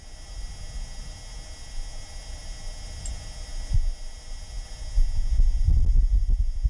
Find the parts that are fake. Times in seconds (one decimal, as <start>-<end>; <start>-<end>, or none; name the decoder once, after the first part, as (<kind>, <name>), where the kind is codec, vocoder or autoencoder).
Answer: none